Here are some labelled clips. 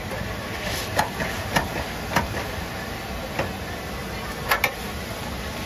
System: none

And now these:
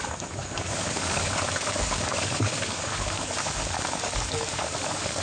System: codec, DAC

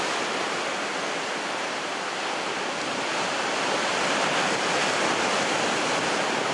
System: none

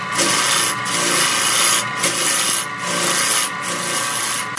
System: none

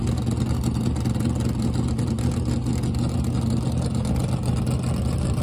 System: none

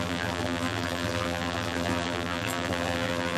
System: vocoder, BigVGAN v2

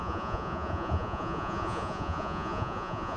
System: vocoder, Vocos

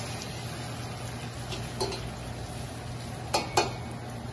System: none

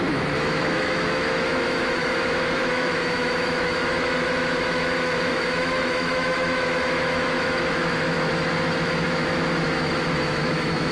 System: autoencoder, DAC-VAE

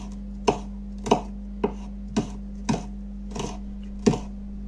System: none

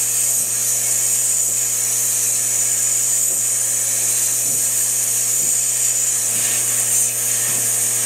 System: none